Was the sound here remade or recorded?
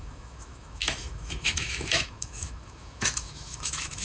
remade